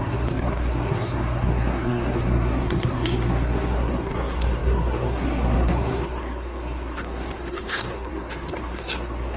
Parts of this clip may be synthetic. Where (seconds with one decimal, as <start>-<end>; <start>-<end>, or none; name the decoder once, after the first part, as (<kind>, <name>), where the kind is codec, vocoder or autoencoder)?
0.0-9.4 (codec, SNAC)

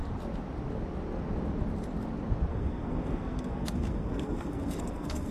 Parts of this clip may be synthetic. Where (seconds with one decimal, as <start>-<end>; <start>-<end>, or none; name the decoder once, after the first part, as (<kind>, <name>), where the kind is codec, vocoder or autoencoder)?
2.5-5.3 (codec, SNAC)

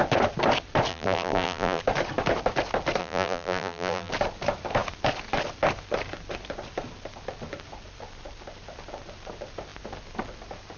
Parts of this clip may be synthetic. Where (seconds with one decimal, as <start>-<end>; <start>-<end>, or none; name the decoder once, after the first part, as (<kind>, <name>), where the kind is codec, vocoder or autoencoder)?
0.9-1.8 (vocoder, BigVGAN v2); 3.0-4.1